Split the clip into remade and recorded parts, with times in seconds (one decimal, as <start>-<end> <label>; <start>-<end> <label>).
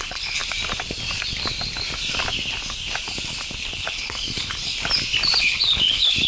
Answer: 0.0-0.4 remade; 0.4-3.7 recorded; 3.7-4.7 remade; 4.7-5.4 recorded; 5.4-6.3 remade